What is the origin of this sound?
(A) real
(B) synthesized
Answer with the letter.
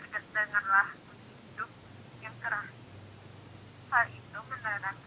A